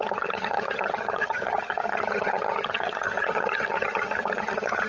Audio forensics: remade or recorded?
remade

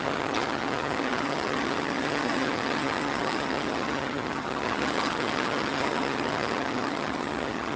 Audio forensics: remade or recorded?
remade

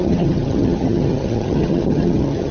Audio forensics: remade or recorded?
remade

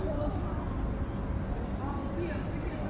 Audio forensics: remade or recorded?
recorded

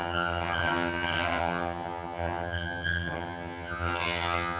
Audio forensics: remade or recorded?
remade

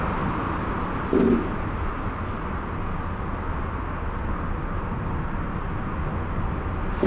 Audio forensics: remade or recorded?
recorded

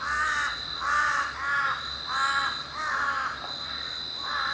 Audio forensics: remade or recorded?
recorded